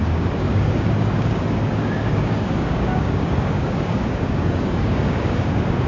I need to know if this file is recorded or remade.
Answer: remade